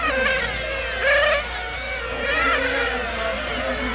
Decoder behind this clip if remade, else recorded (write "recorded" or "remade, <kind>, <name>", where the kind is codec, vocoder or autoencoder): recorded